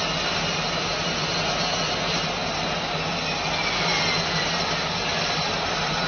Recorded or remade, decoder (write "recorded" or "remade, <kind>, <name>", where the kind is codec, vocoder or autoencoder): recorded